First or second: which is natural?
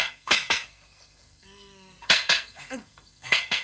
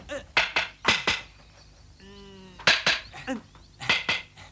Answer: second